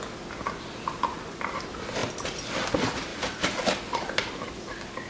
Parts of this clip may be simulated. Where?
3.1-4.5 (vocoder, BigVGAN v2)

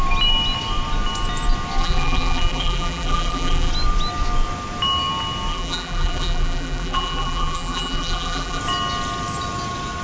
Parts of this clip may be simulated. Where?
1.8-3.7 (vocoder, BigVGAN v2); 5.5-8.6

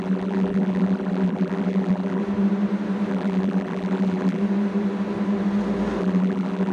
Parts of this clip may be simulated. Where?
0.0-2.2 (vocoder, BigVGAN v2); 3.1-4.4; 6.0-6.7